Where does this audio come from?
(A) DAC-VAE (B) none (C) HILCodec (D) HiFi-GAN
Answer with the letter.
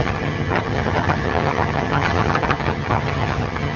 D